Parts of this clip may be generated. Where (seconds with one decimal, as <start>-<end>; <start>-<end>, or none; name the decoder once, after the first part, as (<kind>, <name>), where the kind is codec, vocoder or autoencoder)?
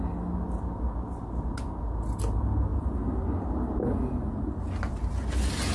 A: none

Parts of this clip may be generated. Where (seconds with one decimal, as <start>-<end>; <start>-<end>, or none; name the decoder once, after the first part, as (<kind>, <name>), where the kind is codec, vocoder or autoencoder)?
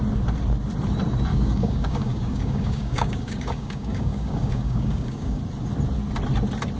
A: 1.3-5.4 (codec, DAC)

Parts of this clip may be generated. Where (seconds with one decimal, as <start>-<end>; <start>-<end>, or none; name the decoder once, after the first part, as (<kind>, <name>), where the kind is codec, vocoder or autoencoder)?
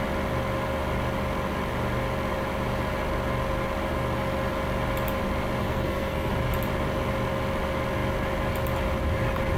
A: 5.6-6.3 (codec, SNAC)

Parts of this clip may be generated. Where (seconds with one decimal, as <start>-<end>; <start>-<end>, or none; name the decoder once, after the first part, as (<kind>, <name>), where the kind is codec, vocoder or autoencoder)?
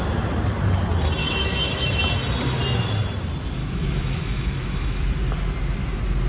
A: 1.2-2.0 (autoencoder, DAC-VAE); 3.6-5.0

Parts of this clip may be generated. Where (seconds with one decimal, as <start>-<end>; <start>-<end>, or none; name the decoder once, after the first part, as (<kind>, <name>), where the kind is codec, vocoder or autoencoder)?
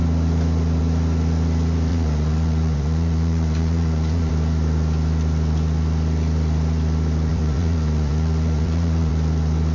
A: 1.9-4.3 (vocoder, Vocos); 7.3-9.1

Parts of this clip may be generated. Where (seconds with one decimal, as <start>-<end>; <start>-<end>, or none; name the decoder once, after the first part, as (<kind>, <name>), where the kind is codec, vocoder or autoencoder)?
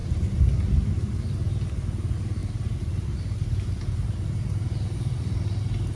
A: none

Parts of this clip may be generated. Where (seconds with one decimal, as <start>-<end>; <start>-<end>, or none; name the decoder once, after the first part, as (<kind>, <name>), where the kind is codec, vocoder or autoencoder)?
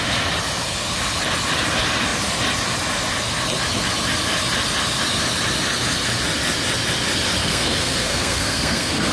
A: 7.4-9.1 (codec, SNAC)